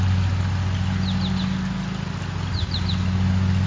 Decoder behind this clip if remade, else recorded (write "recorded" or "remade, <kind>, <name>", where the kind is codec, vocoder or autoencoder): recorded